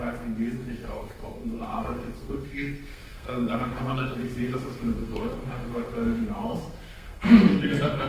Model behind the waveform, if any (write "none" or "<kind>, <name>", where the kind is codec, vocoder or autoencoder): codec, SNAC